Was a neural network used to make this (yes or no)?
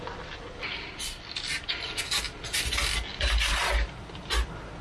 no